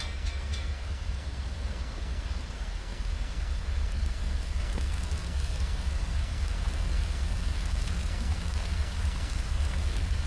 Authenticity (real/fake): fake